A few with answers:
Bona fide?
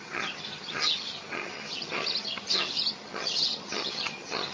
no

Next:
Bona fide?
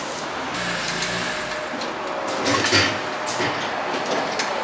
yes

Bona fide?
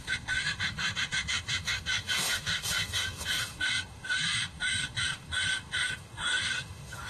no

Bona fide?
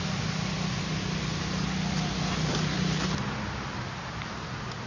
yes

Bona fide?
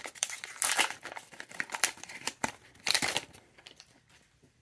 no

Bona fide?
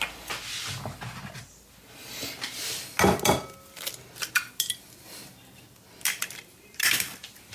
yes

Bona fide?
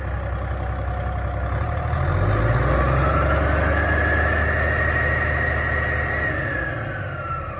yes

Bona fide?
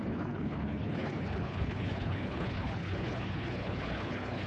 no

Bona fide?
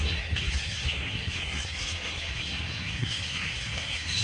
no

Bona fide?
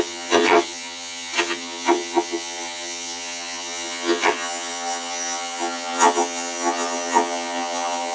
no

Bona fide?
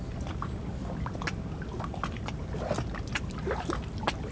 yes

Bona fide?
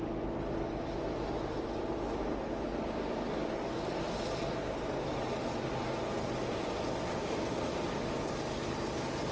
yes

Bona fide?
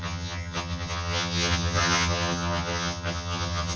no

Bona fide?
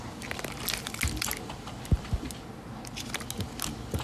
yes